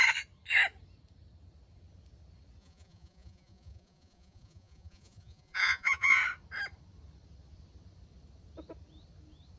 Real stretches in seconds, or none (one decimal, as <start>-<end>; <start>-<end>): 0.0-2.6; 6.2-9.6